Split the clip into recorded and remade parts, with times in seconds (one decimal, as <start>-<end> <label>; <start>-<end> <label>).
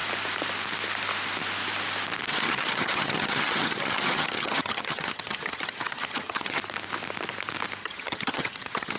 0.0-2.3 recorded; 2.3-6.6 remade; 6.6-7.8 recorded; 7.8-9.0 remade